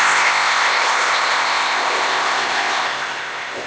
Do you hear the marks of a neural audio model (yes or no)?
yes